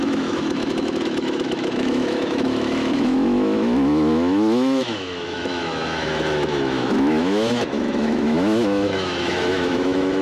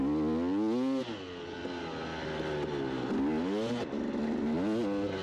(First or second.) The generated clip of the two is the first